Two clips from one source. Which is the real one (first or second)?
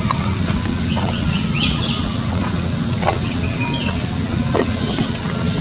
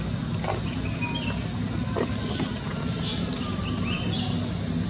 second